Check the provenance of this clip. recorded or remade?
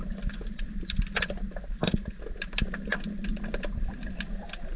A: recorded